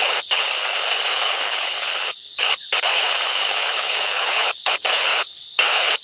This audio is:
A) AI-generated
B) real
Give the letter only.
A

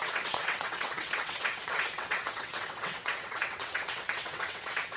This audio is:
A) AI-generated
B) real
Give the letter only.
A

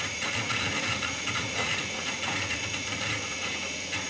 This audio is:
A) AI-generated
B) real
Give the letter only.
A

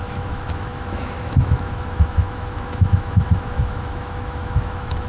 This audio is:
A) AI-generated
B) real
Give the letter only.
A